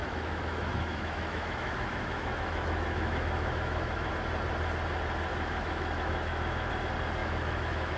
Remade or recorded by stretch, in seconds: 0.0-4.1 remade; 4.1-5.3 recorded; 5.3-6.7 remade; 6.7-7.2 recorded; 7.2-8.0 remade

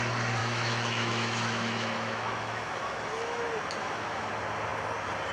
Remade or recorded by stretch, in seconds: 0.0-0.4 recorded; 0.4-3.4 remade; 3.4-3.8 recorded; 3.8-4.3 remade; 4.3-5.3 recorded